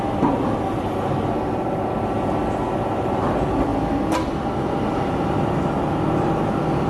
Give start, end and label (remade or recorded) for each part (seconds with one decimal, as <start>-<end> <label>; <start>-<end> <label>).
0.0-6.9 recorded